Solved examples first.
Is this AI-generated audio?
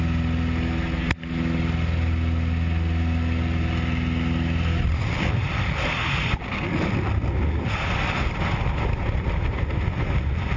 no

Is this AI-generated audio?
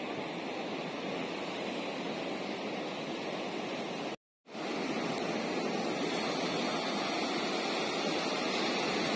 no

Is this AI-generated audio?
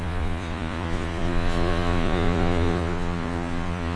yes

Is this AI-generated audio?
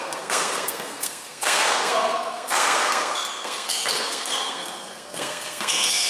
yes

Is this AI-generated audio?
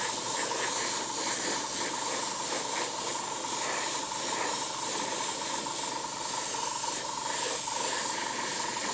yes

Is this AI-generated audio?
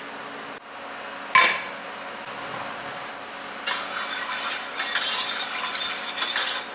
no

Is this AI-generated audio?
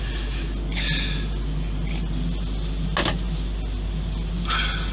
no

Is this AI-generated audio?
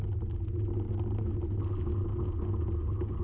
no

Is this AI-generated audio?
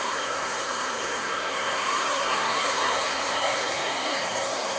yes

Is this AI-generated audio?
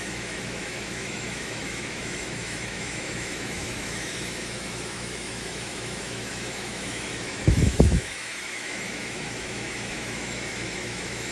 yes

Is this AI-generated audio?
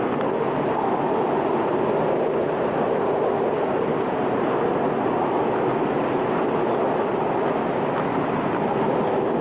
no